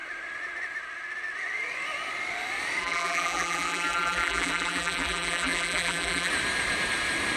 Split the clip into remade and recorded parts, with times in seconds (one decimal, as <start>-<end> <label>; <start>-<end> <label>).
0.0-2.8 recorded; 2.8-6.3 remade; 6.3-7.4 recorded